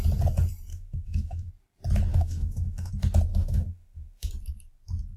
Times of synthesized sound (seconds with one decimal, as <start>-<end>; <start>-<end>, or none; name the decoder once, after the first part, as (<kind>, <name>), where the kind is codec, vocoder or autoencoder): 0.7-1.5 (autoencoder, DAC-VAE); 2.1-2.9; 3.3-4.3